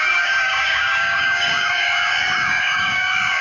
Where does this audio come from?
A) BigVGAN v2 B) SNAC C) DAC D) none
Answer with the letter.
C